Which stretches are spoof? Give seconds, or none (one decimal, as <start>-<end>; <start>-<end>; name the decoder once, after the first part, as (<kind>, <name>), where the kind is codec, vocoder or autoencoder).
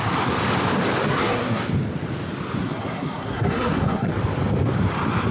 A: 1.0-1.6 (codec, SNAC); 2.6-4.1